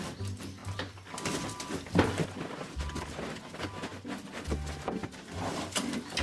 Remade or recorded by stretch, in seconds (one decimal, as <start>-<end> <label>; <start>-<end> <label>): 0.0-6.2 recorded